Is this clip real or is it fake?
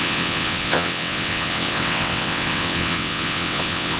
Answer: fake